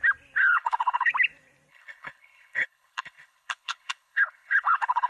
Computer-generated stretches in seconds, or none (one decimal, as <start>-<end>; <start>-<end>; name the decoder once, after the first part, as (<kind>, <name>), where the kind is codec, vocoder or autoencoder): 0.4-1.1 (codec, HILCodec); 1.7-5.1